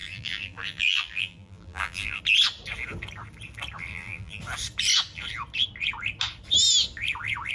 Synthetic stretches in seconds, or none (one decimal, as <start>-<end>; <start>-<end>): 0.0-2.2; 3.9-4.4